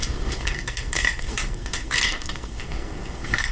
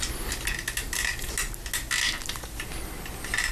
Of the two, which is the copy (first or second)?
first